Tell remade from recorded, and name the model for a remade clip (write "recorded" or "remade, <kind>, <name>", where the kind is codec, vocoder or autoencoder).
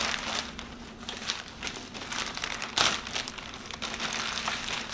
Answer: recorded